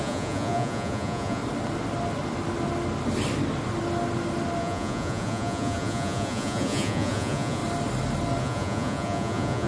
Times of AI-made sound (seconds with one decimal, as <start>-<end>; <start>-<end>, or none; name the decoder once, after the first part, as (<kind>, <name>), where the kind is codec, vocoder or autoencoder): 0.0-1.4 (vocoder, Vocos); 4.6-7.6; 8.4-9.7